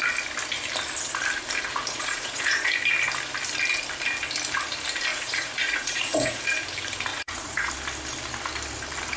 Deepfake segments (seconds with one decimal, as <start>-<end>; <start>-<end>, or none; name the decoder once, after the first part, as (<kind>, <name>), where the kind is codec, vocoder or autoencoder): 1.7-2.7 (vocoder, Vocos); 5.1-6.4; 7.1-7.7